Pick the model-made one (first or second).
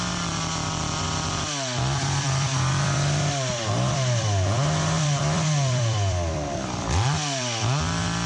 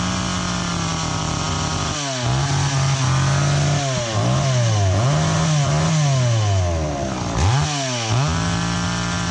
first